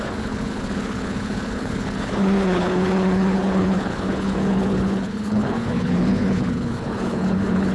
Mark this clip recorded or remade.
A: remade